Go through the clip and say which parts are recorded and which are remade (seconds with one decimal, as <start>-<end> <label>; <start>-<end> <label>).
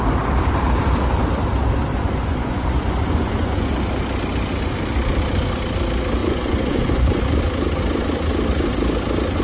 0.0-1.9 recorded; 1.9-3.7 remade; 3.7-6.2 recorded; 6.2-7.2 remade; 7.2-9.4 recorded